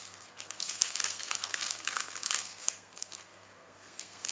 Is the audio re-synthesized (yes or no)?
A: yes